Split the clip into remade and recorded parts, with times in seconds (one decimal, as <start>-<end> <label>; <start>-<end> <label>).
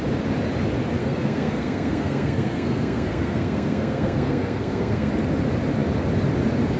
0.0-1.0 recorded; 1.0-5.1 remade; 5.1-6.8 recorded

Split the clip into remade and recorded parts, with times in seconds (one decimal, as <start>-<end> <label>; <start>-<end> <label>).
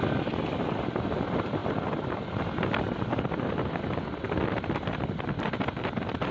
0.0-6.3 recorded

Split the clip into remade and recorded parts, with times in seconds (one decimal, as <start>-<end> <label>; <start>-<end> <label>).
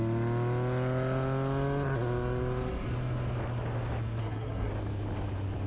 0.0-4.2 recorded; 4.2-4.7 remade; 4.7-5.7 recorded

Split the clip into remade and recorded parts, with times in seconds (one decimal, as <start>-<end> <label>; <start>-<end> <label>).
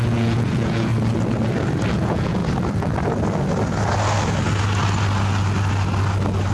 0.0-0.9 remade; 0.9-1.9 recorded; 1.9-2.4 remade; 2.4-6.5 recorded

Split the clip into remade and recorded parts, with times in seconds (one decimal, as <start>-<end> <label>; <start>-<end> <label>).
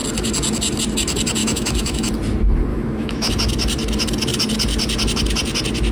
0.0-1.4 recorded; 1.4-2.1 remade; 2.1-2.7 recorded; 2.7-3.3 remade; 3.3-5.9 recorded